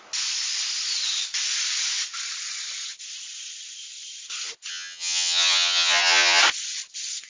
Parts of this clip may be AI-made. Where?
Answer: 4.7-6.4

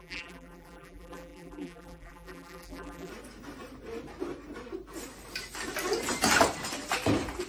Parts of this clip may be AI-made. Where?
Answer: 0.0-3.1

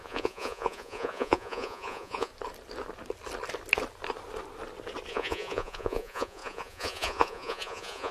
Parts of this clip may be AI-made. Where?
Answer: 0.0-2.3; 5.1-8.1